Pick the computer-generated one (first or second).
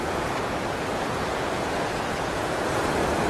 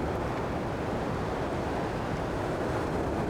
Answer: first